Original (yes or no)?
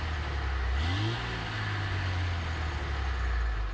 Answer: yes